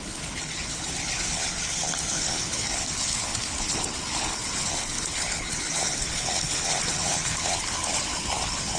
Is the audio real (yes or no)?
no